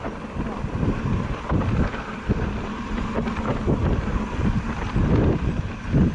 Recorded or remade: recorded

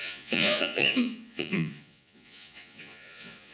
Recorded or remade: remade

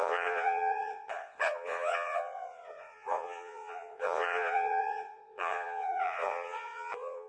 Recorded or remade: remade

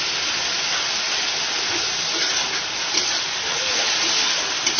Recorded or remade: recorded